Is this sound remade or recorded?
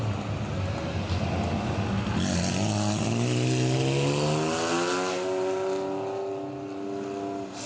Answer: recorded